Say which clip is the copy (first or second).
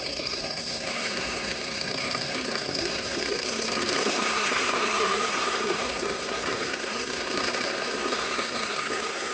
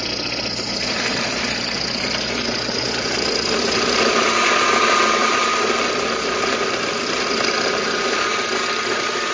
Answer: first